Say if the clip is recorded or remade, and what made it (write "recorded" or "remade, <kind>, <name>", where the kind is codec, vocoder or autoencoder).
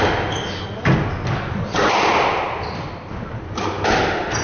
recorded